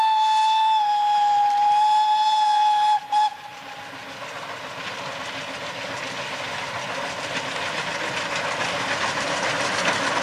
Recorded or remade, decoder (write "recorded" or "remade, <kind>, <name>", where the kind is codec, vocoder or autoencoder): recorded